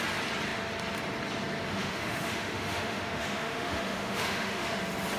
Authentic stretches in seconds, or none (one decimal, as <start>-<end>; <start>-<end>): 0.0-1.7; 4.8-5.2